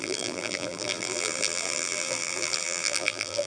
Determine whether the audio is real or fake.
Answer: fake